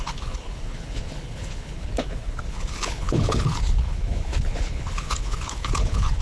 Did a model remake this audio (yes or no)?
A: yes